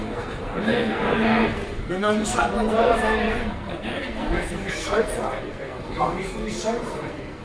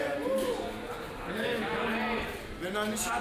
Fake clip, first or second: first